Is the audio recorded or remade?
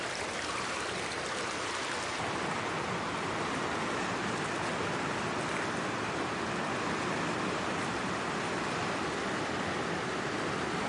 recorded